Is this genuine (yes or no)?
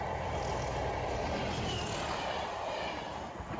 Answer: yes